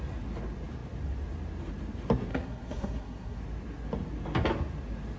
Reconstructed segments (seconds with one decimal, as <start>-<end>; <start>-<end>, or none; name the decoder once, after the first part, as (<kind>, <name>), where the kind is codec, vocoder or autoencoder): 2.3-3.4 (codec, SNAC)